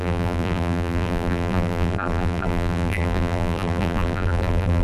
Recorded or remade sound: remade